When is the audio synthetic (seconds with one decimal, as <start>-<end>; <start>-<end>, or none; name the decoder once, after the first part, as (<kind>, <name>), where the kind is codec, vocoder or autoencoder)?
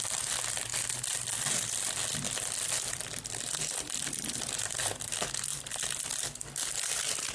none